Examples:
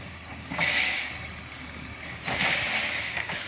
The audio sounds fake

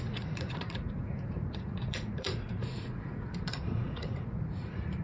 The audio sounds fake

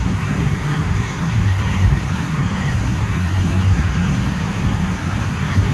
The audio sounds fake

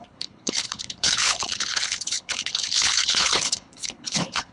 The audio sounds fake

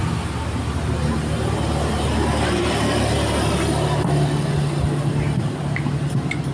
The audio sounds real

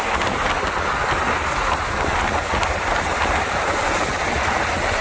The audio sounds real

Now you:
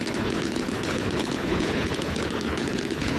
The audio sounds fake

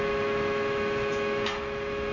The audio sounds fake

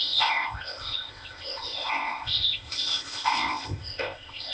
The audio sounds fake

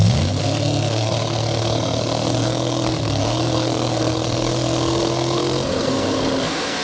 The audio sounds fake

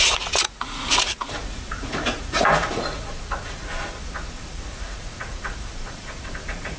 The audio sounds fake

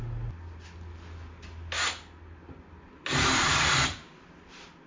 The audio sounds real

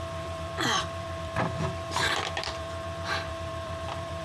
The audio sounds fake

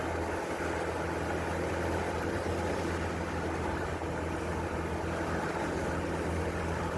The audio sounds real